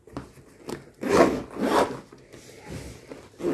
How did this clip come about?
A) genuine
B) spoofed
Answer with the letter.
A